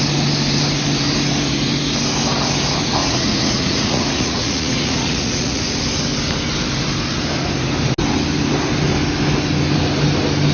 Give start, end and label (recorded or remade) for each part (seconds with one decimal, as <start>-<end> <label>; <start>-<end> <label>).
0.0-3.0 recorded; 3.0-5.6 remade; 5.6-10.5 recorded